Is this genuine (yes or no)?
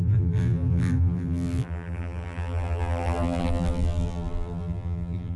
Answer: no